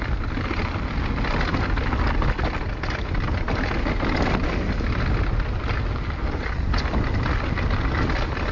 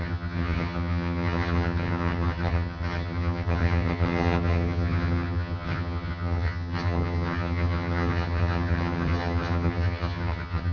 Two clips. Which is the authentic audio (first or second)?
first